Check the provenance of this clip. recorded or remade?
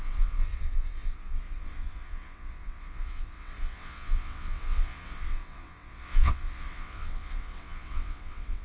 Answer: remade